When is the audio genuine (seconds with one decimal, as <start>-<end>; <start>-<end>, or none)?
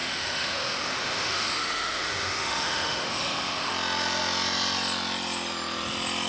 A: 3.7-6.3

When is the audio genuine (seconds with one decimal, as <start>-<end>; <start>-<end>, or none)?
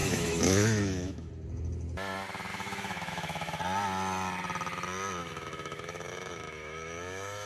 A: 1.3-2.5; 3.6-5.2